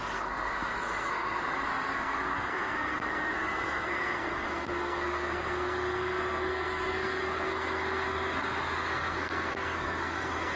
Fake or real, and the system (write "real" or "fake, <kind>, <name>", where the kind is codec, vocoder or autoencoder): fake, codec, SNAC